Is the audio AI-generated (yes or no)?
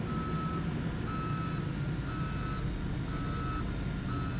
no